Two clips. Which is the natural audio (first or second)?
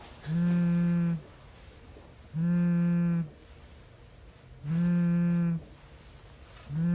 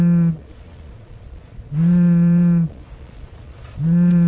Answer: first